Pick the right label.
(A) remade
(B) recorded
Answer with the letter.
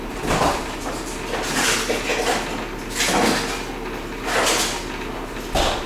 B